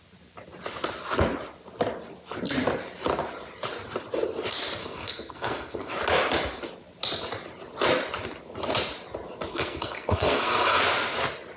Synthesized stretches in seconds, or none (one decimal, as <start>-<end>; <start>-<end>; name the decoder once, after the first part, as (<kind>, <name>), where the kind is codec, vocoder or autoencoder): 4.8-5.9 (codec, SNAC); 9.5-10.8